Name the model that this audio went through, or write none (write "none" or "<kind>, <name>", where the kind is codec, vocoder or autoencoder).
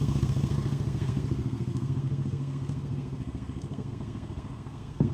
codec, SNAC